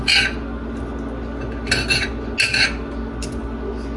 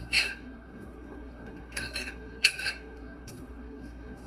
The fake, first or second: second